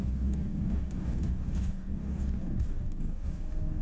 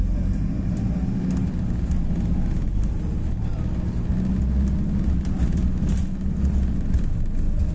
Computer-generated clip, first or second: first